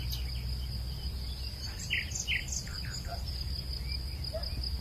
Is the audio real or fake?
real